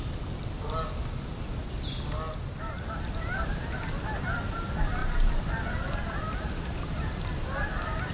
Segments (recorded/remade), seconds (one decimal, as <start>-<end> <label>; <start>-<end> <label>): 0.0-5.0 recorded; 5.0-6.4 remade; 6.4-8.1 recorded

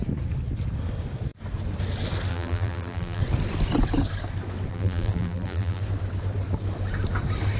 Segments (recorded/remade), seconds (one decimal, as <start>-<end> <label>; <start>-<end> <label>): 0.0-2.3 recorded; 2.3-3.2 remade; 3.2-4.7 recorded; 4.7-5.8 remade; 5.8-7.6 recorded

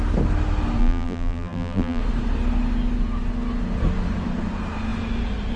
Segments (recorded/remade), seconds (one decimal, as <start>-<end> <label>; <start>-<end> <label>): 0.0-0.8 recorded; 0.8-2.0 remade; 2.0-5.6 recorded

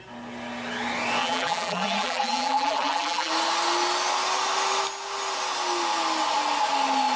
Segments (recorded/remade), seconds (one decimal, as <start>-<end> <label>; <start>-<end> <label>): 0.0-1.2 recorded; 1.2-3.3 remade; 3.3-7.2 recorded

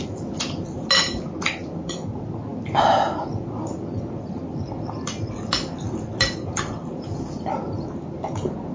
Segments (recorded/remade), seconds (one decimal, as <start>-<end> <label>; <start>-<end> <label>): 0.0-8.7 recorded

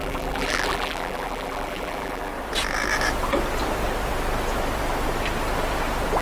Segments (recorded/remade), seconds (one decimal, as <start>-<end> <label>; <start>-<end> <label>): 0.0-2.3 remade; 2.3-6.2 recorded

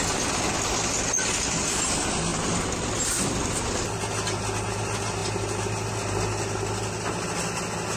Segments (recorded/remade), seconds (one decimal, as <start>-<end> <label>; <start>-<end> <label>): 0.0-5.2 recorded; 5.2-5.9 remade; 5.9-8.0 recorded